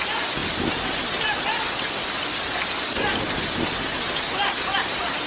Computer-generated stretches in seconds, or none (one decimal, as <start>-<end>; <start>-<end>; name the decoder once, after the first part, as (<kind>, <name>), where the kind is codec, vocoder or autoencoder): none